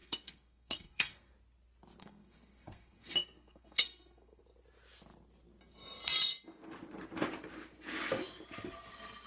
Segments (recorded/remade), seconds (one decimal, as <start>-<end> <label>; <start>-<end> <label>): 0.0-1.3 remade; 1.3-2.0 recorded; 2.0-4.4 remade; 4.4-9.3 recorded